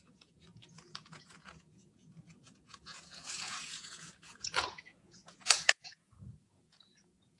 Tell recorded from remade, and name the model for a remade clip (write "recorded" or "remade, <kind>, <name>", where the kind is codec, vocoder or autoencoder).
remade, vocoder, Vocos